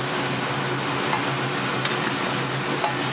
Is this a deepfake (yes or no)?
no